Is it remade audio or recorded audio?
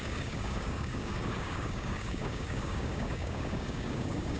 remade